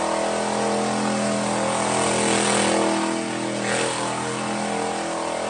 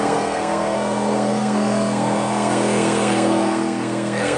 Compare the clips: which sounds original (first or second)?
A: first